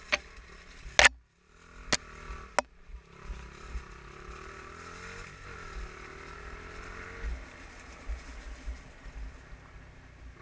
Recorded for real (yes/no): yes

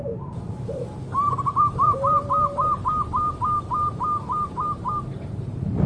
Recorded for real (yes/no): no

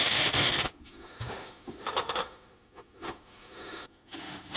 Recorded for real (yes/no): no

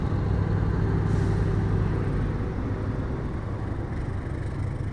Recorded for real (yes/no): yes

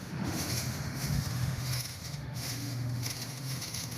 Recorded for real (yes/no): no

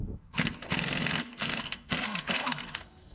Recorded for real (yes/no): no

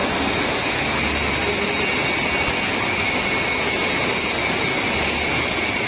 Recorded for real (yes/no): yes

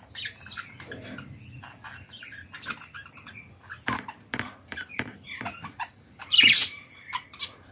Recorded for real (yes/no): no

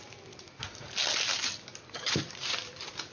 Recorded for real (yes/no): yes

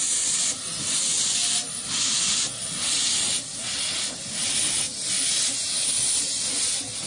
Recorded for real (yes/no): yes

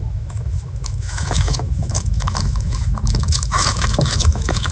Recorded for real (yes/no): no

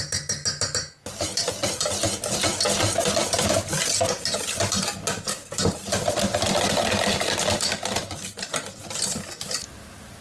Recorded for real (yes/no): yes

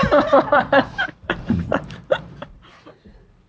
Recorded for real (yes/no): no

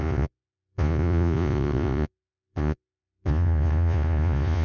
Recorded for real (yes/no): no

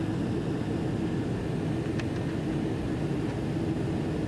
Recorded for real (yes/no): yes